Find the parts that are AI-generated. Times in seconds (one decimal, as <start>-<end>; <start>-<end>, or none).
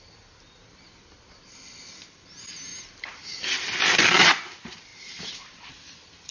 4.9-5.7